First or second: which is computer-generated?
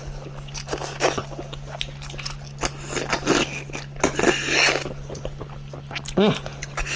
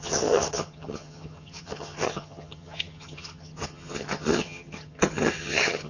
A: second